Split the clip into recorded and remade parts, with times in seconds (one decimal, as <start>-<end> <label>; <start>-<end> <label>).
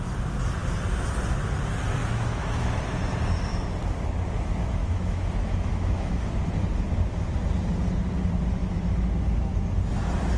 0.0-2.0 recorded; 2.0-2.8 remade; 2.8-4.8 recorded; 4.8-6.2 remade; 6.2-10.4 recorded